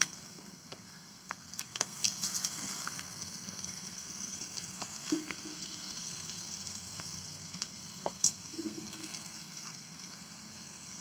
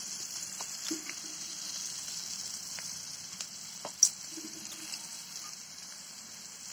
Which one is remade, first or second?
first